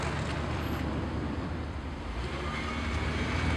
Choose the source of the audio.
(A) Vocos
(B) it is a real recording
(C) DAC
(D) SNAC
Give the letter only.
B